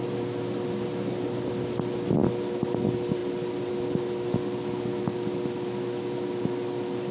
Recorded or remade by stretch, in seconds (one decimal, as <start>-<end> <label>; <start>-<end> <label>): 0.0-1.5 remade; 1.5-3.2 recorded; 3.2-3.7 remade; 3.7-7.1 recorded